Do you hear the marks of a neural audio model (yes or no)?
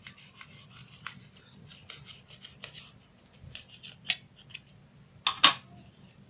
no